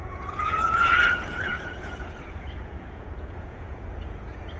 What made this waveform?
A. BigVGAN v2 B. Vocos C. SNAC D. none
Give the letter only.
B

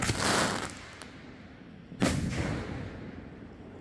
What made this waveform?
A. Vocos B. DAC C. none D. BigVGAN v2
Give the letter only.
C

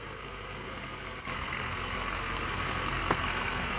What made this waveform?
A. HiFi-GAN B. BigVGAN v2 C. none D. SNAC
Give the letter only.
D